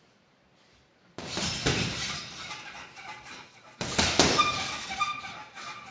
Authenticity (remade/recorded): recorded